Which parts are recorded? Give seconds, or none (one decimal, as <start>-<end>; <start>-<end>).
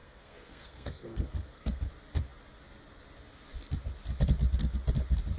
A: 1.9-5.4